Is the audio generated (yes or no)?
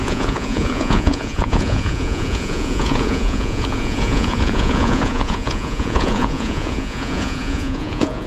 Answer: yes